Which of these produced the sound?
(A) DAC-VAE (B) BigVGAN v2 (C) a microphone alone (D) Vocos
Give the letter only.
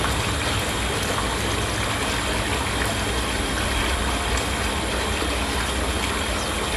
C